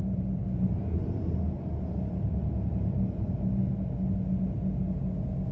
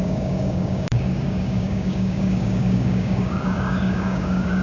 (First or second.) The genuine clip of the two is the first